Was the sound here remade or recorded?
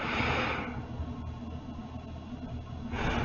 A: recorded